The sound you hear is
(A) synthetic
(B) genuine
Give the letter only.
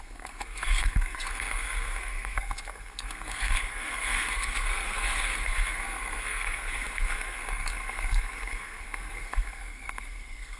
A